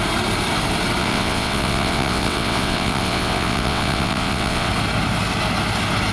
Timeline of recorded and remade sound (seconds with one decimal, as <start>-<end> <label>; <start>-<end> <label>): 0.0-1.0 recorded; 1.0-4.7 remade; 4.7-6.1 recorded